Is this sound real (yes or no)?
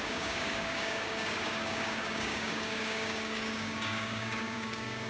no